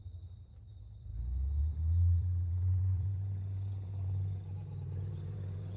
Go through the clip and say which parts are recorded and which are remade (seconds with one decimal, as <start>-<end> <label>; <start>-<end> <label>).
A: 0.0-1.1 remade; 1.1-1.6 recorded; 1.6-5.8 remade